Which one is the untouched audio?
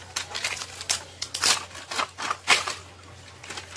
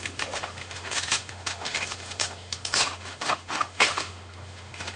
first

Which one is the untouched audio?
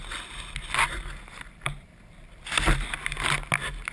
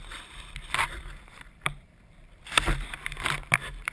first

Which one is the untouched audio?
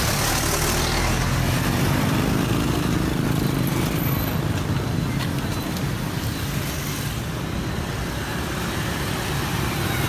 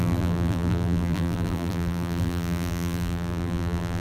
first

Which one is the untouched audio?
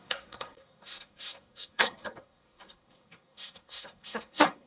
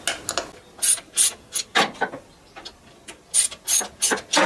second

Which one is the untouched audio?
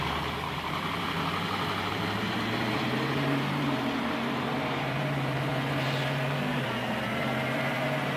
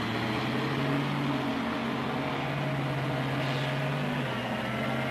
second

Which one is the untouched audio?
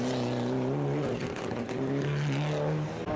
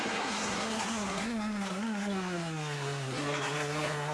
first